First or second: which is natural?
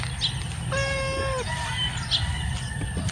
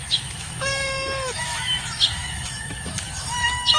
first